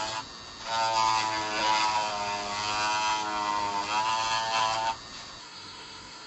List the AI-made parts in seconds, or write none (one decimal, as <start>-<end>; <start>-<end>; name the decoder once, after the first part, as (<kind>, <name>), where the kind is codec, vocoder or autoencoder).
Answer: 5.4-6.3 (codec, SNAC)